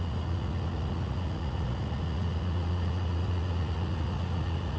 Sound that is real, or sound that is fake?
fake